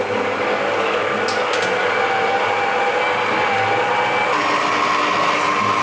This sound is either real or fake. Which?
real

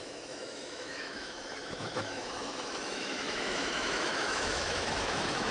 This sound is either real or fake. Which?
fake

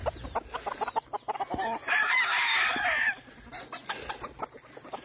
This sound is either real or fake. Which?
real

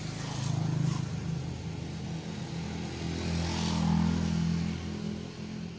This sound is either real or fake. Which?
real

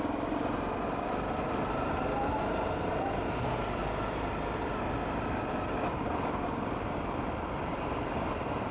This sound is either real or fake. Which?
real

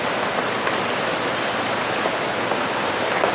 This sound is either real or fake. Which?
real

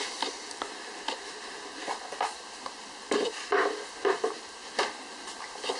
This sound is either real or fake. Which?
real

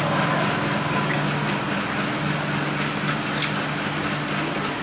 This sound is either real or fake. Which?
real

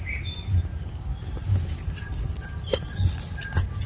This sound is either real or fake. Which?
real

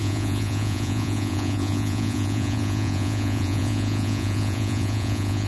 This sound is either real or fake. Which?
fake